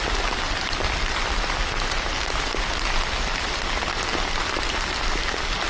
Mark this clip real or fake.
real